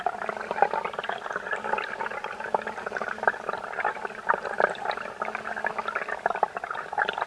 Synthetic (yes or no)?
no